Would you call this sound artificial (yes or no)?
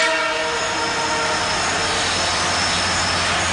no